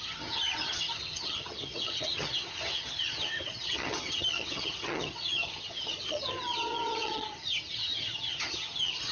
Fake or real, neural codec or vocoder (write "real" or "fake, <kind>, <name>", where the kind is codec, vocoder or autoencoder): fake, vocoder, HiFi-GAN